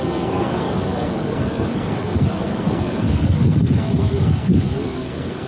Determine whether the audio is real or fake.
fake